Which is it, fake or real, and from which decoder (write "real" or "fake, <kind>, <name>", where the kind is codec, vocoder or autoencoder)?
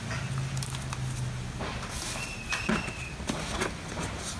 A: real